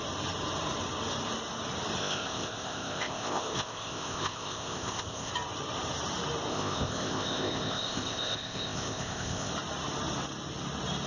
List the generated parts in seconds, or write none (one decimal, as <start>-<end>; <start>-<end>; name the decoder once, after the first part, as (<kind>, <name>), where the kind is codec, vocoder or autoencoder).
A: 2.0-5.3 (codec, ZipCodec); 6.5-9.5